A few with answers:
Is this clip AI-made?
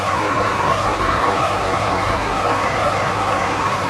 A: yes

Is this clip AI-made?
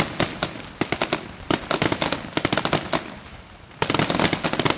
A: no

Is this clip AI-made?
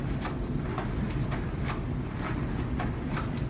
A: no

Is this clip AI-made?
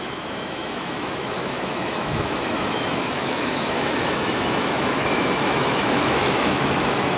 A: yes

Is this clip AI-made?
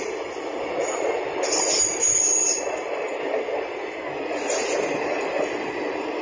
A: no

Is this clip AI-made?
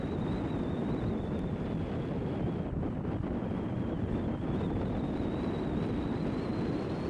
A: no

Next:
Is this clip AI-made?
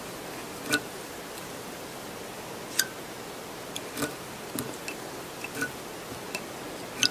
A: no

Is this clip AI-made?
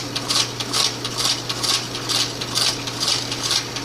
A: no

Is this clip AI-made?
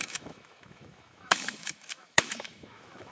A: yes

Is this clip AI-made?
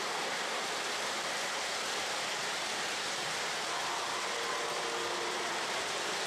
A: no